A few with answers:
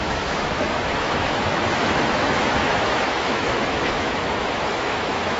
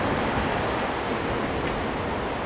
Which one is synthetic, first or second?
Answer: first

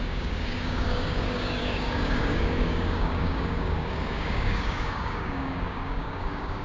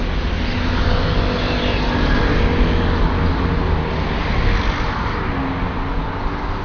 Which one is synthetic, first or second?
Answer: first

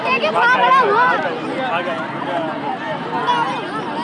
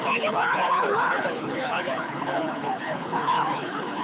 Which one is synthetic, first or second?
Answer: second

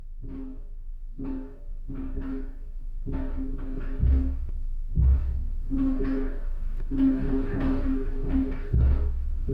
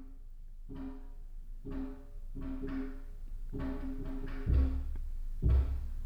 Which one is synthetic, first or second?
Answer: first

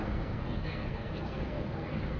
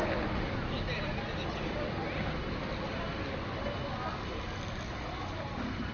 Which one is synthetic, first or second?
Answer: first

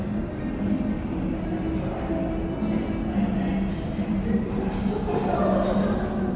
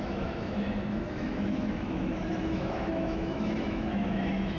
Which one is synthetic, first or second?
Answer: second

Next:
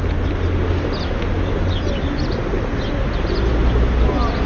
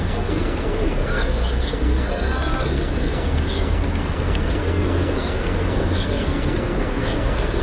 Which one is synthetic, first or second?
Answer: second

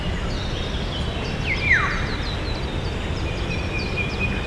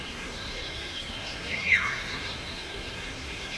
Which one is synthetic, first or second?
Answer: second